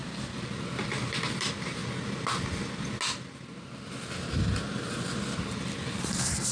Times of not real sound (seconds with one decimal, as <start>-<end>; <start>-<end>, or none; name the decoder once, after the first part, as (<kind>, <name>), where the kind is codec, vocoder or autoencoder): 0.0-1.8 (vocoder, BigVGAN v2); 4.7-6.5